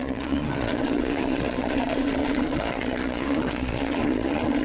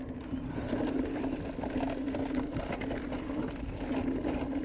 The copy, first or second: first